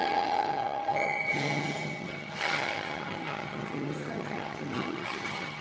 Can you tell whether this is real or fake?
fake